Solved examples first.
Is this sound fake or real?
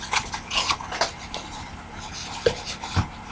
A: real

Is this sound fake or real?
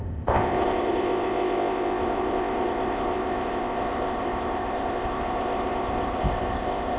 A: fake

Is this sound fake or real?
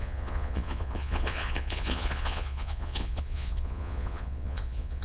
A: fake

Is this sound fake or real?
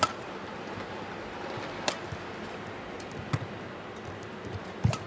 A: real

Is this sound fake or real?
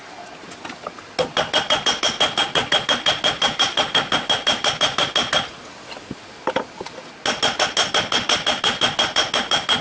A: real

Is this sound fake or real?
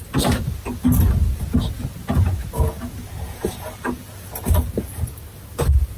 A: real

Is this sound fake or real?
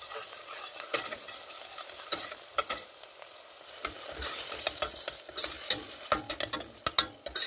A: real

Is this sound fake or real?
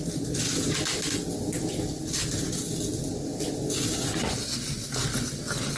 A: real